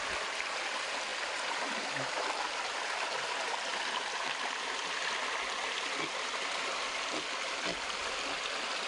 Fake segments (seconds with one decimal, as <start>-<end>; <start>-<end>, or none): none